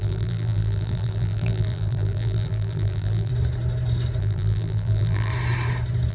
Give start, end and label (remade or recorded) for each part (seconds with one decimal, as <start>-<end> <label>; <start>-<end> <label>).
0.0-3.3 remade; 3.3-4.2 recorded; 4.2-5.3 remade; 5.3-6.1 recorded